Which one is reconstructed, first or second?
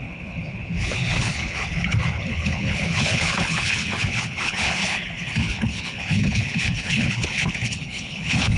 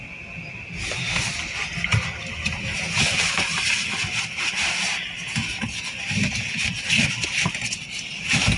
first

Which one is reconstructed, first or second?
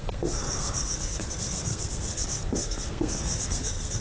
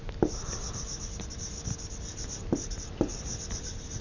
first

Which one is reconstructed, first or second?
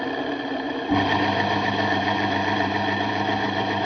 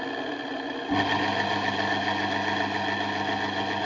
first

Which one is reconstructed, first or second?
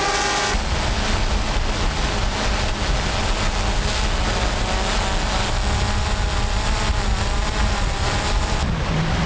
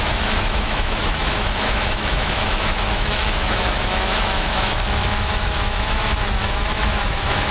second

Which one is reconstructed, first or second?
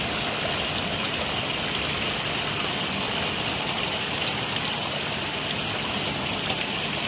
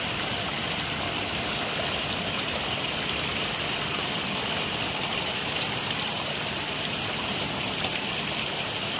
second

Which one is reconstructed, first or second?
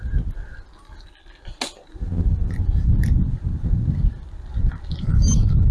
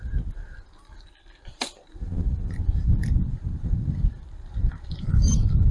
second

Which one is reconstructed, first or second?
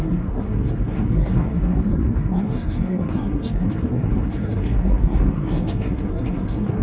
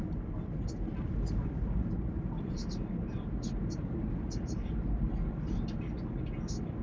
first